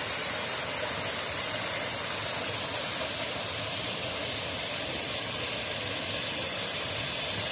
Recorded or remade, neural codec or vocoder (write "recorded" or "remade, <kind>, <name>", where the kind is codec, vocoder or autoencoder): recorded